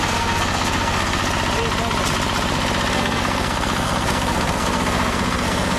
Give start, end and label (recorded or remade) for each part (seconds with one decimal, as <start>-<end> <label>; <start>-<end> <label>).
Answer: 0.0-1.2 remade; 1.2-2.9 recorded; 2.9-5.8 remade